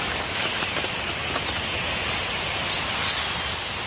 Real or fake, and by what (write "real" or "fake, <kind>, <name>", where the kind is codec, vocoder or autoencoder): real